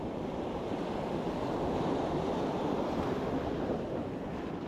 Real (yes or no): no